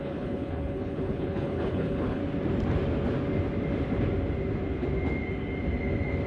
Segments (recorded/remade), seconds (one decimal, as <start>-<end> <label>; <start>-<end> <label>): 0.0-2.2 remade; 2.2-6.3 recorded